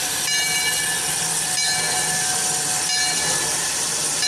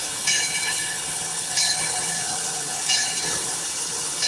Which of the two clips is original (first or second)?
first